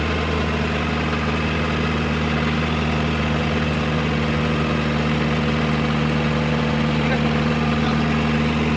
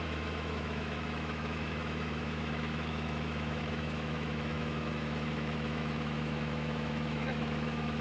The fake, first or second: second